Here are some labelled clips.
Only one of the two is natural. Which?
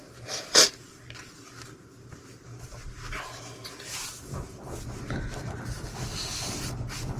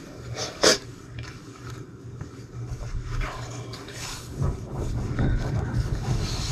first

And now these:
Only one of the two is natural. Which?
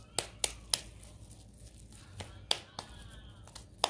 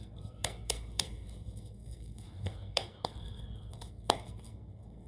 first